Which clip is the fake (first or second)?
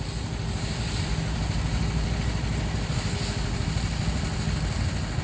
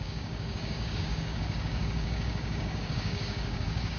second